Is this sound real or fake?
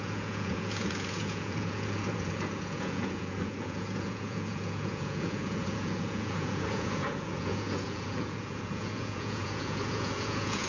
fake